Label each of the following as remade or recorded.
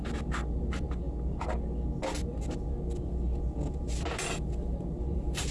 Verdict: recorded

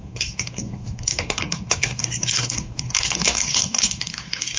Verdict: remade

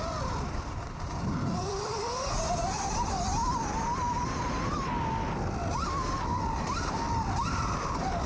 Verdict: recorded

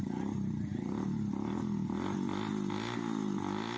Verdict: recorded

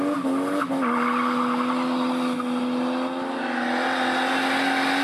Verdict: recorded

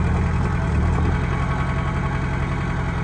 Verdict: recorded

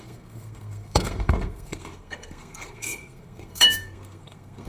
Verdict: remade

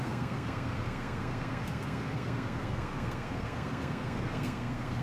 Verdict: remade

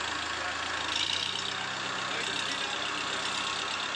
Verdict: recorded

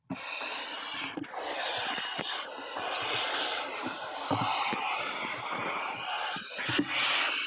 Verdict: recorded